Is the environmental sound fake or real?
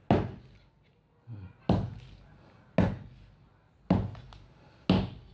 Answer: real